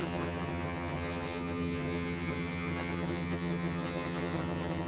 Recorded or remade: remade